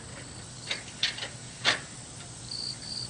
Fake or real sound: real